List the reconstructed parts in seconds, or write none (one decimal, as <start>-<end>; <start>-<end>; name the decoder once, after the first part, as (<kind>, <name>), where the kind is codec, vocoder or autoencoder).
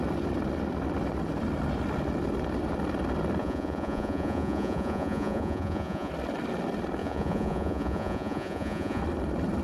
3.4-6.1 (vocoder, Vocos); 7.0-9.0